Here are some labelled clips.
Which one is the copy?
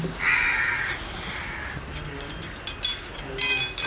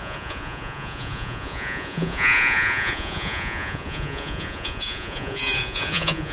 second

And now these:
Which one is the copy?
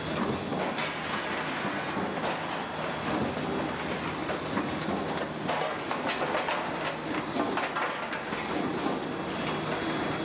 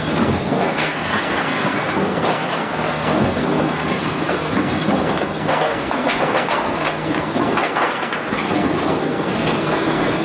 second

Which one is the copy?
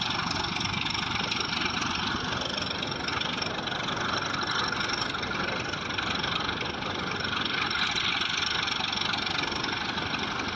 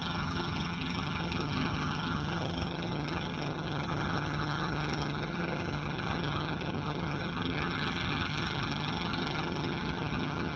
second